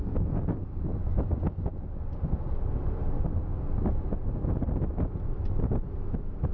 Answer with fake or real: real